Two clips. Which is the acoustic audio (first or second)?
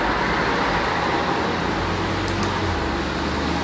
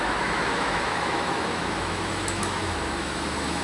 first